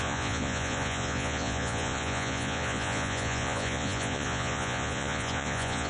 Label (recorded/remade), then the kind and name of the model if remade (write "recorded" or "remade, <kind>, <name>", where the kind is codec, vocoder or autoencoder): remade, vocoder, Vocos